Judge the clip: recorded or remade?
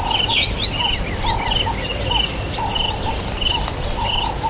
recorded